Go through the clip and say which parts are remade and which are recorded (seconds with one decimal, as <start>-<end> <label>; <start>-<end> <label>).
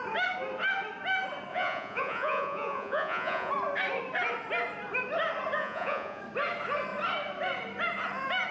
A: 0.0-1.5 recorded; 1.5-3.5 remade; 3.5-5.6 recorded; 5.6-6.2 remade; 6.2-8.5 recorded